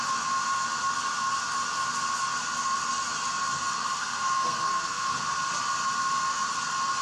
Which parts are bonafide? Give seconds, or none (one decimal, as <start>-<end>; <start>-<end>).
0.0-4.0; 5.2-7.0